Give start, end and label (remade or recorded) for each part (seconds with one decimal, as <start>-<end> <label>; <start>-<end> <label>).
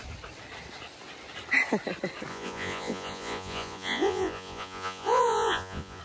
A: 0.0-2.3 recorded; 2.3-6.0 remade